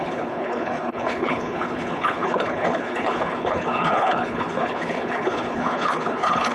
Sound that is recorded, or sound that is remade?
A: remade